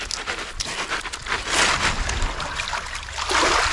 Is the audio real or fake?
real